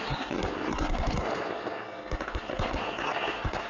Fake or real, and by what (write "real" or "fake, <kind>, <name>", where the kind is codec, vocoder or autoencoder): fake, codec, SNAC